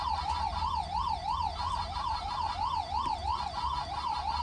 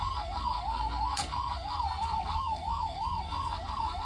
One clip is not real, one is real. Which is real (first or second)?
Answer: first